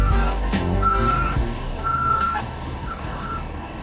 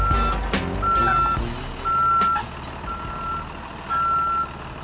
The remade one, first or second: first